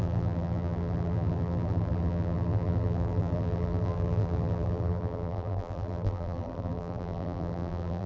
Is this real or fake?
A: fake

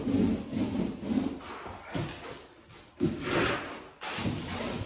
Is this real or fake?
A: real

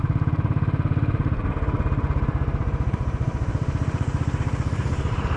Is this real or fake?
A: fake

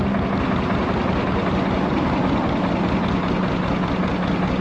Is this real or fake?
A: real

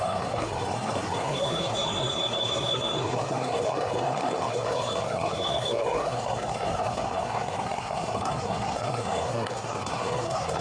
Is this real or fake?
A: fake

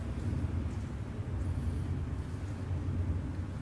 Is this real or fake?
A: real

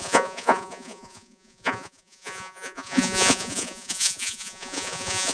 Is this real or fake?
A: fake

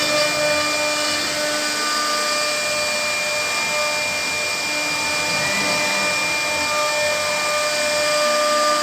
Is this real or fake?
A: real